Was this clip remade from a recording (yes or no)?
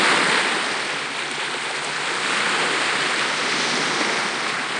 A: no